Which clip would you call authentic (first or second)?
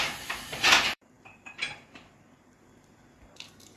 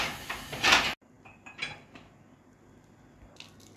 second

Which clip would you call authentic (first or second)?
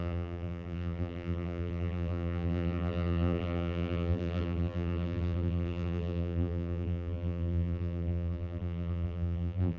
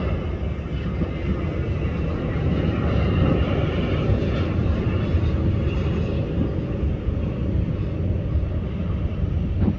second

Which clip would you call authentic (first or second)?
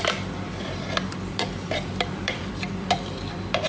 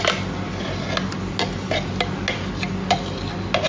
second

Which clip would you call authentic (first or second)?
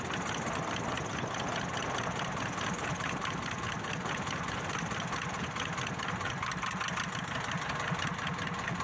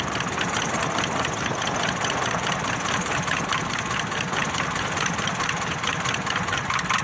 first